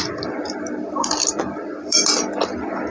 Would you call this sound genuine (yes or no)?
no